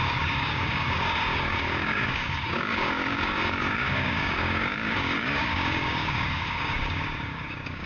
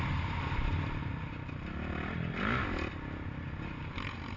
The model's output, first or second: first